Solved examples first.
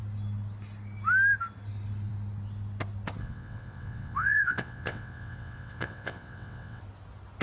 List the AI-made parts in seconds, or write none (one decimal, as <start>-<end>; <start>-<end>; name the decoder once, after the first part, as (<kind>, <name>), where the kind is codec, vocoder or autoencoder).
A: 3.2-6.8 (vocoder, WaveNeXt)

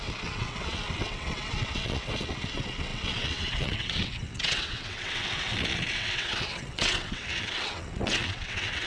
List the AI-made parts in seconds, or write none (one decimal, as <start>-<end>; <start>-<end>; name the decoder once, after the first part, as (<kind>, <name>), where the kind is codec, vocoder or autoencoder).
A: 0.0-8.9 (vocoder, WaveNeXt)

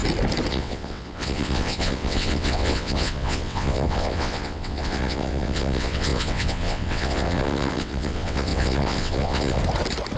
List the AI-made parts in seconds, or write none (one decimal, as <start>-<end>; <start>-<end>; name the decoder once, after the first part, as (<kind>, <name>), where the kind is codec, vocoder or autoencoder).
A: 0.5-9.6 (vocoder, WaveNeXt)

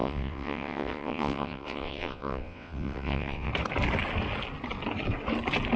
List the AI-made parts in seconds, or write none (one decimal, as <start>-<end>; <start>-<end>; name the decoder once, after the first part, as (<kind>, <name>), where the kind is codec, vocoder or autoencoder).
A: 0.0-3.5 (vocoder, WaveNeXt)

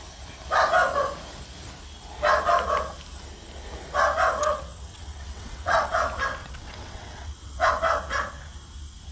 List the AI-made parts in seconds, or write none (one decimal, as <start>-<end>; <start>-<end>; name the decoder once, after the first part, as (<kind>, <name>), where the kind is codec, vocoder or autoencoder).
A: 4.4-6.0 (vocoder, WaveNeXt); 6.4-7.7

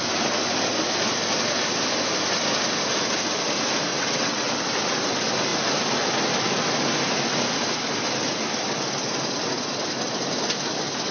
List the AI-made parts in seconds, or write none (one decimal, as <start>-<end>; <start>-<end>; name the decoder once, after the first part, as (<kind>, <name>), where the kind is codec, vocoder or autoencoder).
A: 3.9-4.5 (vocoder, WaveNeXt)

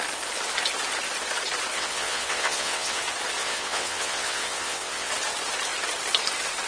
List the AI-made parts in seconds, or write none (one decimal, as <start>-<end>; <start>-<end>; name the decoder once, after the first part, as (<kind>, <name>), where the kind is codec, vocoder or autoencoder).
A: 1.7-3.0 (vocoder, WaveNeXt); 3.4-5.1